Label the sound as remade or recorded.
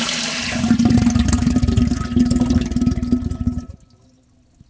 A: recorded